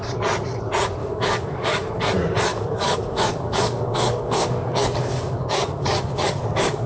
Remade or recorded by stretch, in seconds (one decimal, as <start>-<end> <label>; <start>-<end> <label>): 0.0-1.0 recorded; 1.0-2.0 remade; 2.0-2.5 recorded; 2.5-6.9 remade